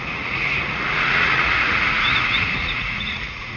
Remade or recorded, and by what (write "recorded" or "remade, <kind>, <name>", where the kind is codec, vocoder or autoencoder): remade, vocoder, Vocos